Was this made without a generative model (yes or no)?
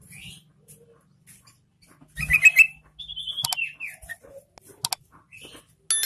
yes